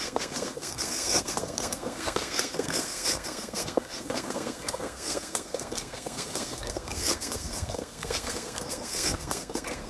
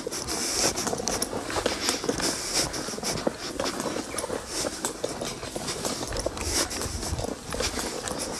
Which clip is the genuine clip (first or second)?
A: second